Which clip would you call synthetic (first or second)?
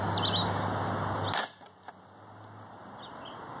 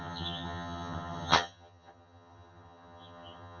second